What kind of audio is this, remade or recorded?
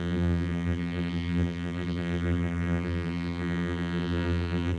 remade